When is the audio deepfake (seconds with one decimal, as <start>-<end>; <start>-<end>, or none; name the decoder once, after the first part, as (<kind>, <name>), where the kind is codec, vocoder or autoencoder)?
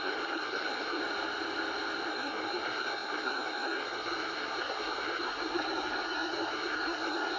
0.0-1.0 (codec, SNAC); 2.1-7.4